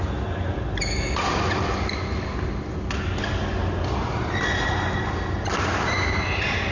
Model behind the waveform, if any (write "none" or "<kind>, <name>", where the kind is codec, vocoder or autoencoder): none